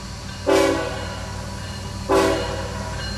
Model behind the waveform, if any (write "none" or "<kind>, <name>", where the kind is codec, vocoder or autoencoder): none